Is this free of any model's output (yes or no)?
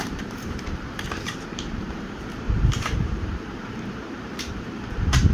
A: no